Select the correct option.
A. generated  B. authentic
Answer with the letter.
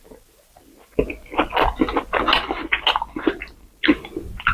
B